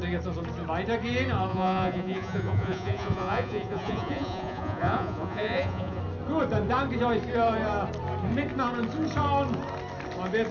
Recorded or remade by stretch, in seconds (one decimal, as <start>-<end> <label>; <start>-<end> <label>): 0.0-1.5 recorded; 1.5-6.0 remade; 6.0-10.5 recorded